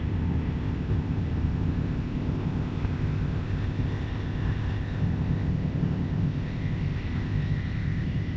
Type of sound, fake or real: fake